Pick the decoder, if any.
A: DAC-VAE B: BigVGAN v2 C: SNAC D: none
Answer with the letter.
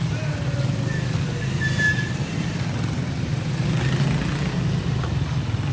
D